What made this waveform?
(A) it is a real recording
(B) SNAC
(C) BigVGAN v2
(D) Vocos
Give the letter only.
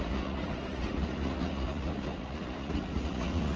D